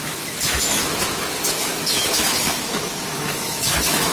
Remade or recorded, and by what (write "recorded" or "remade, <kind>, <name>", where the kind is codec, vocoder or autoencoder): remade, autoencoder, DAC-VAE